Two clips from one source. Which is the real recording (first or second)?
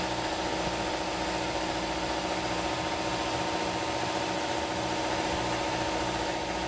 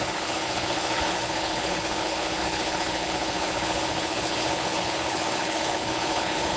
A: first